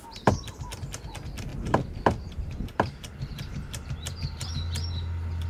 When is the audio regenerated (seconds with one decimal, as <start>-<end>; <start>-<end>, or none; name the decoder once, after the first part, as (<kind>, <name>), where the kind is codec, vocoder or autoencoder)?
1.5-4.5 (vocoder, BigVGAN v2)